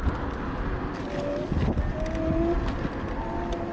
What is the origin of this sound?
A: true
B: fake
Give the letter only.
A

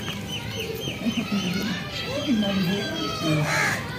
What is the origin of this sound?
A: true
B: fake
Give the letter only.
A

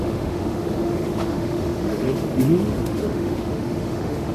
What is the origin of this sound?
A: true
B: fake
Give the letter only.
B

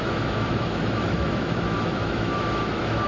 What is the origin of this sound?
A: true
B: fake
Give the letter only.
B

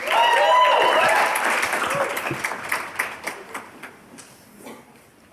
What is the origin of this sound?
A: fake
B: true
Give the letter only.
B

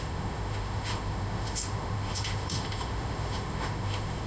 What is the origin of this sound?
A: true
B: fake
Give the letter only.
B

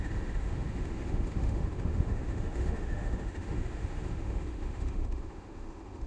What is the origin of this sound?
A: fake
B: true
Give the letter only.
A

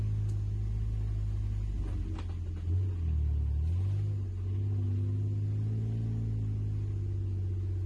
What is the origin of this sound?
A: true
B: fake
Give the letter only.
A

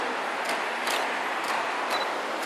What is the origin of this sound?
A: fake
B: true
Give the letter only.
B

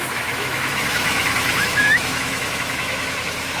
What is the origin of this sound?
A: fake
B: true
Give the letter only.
A